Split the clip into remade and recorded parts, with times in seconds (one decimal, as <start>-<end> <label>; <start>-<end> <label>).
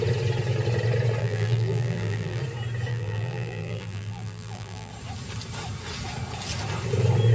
0.0-1.2 recorded; 1.2-2.4 remade; 2.4-2.9 recorded; 2.9-4.9 remade; 4.9-7.3 recorded